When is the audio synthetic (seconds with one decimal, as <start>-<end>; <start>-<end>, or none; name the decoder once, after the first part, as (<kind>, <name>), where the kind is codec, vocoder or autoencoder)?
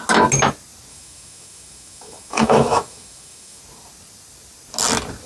0.9-3.6 (autoencoder, DAC-VAE)